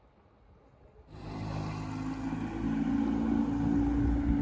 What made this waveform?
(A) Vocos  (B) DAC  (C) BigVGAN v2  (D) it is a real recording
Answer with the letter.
D